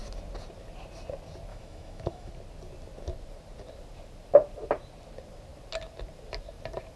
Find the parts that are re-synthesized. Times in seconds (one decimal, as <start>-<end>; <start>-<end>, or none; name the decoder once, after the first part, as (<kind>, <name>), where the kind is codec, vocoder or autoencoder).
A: 1.5-2.3 (autoencoder, DAC-VAE)